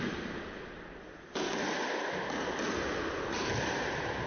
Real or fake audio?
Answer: real